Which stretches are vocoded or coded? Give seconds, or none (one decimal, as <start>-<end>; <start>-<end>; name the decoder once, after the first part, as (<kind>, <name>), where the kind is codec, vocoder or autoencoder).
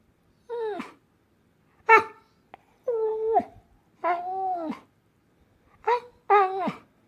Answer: none